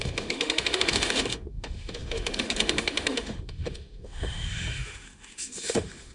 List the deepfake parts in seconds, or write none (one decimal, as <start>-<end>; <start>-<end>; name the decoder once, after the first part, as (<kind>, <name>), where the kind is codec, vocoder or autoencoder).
0.0-6.1 (autoencoder, DAC-VAE)